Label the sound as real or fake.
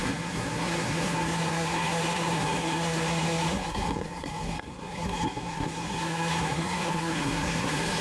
fake